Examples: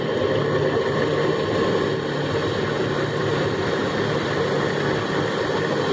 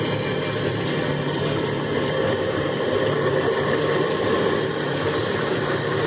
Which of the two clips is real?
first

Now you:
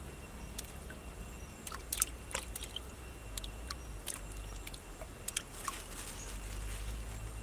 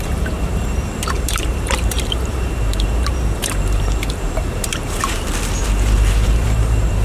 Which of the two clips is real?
first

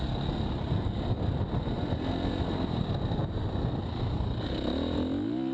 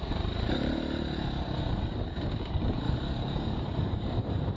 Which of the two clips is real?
first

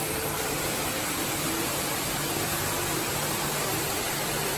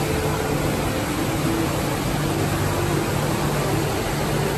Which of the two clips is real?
second